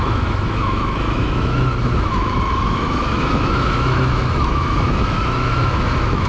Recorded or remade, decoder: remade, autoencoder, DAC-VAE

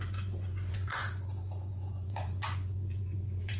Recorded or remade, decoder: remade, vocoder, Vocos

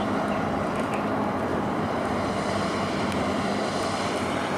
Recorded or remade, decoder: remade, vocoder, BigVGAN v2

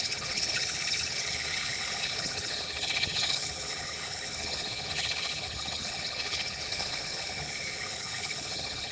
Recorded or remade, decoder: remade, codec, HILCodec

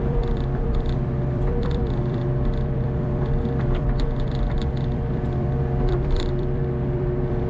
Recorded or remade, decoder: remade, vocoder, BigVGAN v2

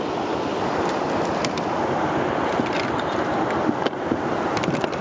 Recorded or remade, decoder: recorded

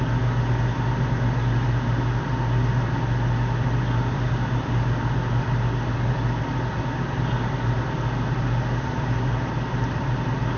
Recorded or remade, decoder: recorded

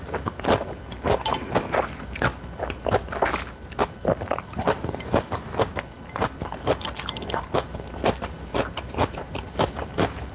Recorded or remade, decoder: recorded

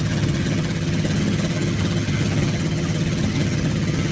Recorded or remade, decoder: remade, vocoder, HiFi-GAN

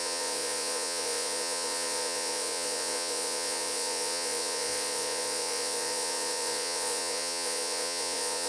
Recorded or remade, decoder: remade, vocoder, Vocos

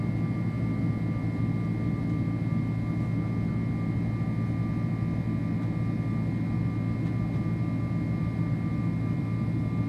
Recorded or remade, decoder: recorded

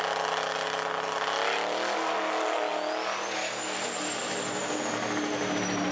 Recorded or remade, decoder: recorded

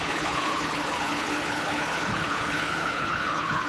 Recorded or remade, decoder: remade, codec, HILCodec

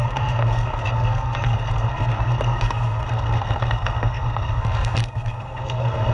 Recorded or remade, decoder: remade, codec, SNAC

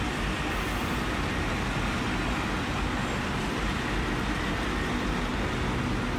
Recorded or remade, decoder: recorded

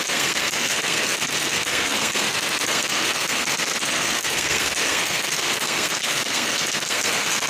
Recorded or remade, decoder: remade, codec, SNAC